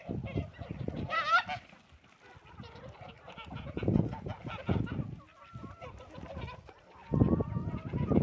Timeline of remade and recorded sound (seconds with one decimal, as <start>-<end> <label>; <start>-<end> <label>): 0.0-8.2 recorded